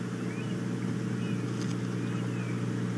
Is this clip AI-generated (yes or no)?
no